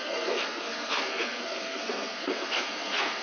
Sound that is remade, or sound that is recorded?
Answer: remade